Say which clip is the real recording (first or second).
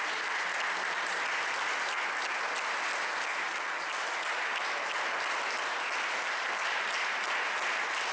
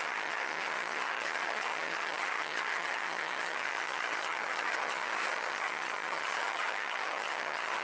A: first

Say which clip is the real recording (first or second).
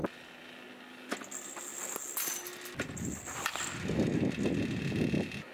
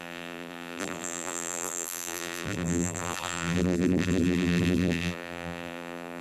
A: first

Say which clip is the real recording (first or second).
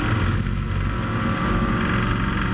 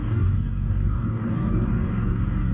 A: first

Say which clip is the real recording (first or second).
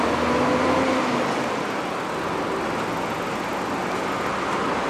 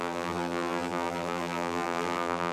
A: first